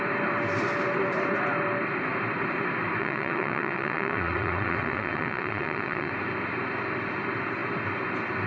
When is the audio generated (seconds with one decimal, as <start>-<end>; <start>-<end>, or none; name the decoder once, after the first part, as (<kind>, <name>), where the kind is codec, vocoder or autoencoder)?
3.0-6.1 (vocoder, WaveNeXt)